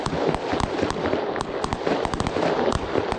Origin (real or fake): real